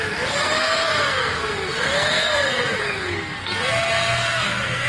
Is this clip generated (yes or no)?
yes